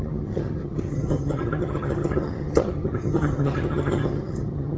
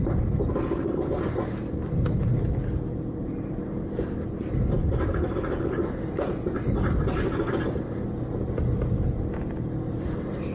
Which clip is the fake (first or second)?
first